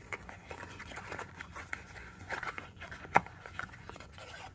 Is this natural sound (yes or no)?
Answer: no